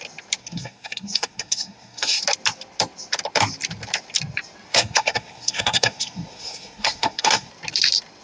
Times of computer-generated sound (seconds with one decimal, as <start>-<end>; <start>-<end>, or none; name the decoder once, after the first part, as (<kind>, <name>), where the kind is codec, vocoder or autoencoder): 0.4-2.2 (codec, SNAC); 4.7-7.5